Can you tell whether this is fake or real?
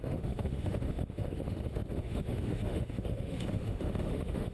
fake